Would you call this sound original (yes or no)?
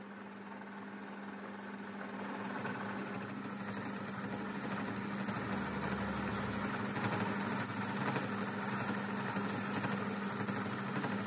yes